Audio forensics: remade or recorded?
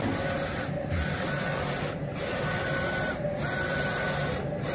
recorded